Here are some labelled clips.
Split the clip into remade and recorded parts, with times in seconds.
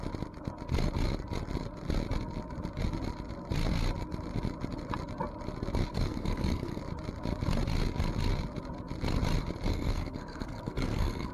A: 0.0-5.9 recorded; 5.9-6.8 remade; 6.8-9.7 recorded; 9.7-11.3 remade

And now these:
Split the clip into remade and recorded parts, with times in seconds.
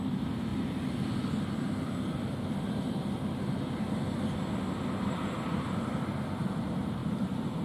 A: 0.0-0.5 remade; 0.5-5.1 recorded; 5.1-7.6 remade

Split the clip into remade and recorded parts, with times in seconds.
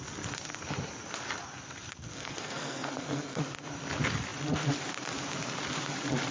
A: 0.0-2.0 recorded; 2.0-3.4 remade; 3.4-6.3 recorded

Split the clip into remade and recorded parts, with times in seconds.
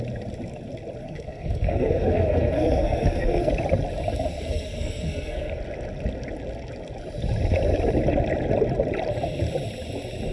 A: 0.0-1.0 recorded; 1.0-3.5 remade; 3.5-4.3 recorded; 4.3-5.6 remade; 5.6-10.3 recorded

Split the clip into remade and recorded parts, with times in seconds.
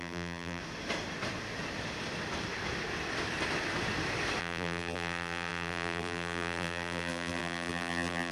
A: 0.0-0.6 remade; 0.6-4.4 recorded; 4.4-8.3 remade